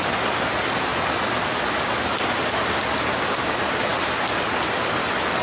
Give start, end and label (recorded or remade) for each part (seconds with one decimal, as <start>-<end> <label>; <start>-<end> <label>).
0.0-5.4 recorded